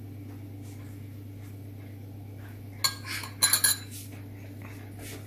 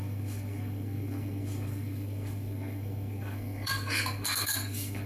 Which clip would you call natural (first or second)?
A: first